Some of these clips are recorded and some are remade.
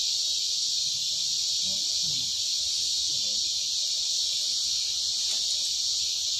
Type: recorded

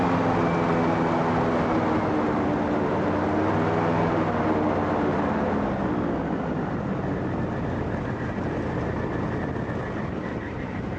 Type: recorded